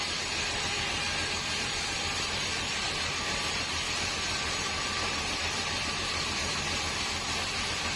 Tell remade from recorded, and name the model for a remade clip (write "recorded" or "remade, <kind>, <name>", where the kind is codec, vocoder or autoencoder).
remade, vocoder, BigVGAN v2